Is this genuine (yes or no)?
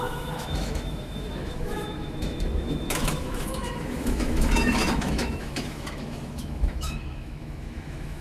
no